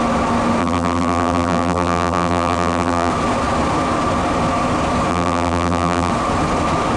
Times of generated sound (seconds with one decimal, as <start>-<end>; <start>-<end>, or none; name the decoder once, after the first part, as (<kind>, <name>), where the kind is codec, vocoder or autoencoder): 0.6-3.1 (vocoder, BigVGAN v2); 5.1-6.1